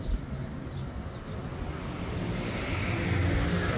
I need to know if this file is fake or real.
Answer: real